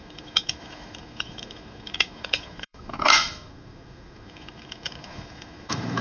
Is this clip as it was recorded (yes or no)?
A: no